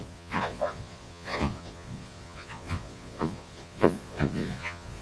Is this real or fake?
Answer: fake